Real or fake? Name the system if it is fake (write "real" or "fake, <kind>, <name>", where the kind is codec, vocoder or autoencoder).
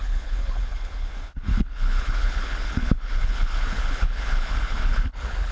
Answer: fake, codec, HILCodec